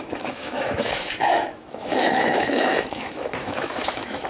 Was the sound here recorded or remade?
remade